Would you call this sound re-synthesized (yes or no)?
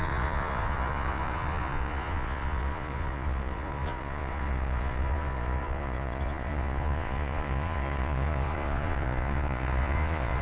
yes